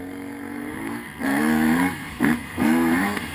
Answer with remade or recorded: remade